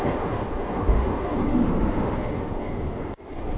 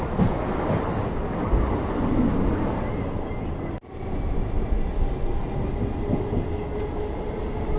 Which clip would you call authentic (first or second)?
second